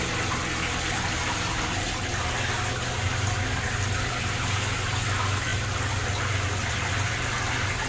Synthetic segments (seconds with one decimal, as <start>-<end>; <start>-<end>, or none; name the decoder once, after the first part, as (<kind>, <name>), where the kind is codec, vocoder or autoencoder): none